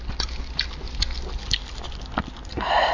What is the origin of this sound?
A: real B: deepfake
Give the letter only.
A